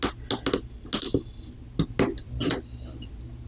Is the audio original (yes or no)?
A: yes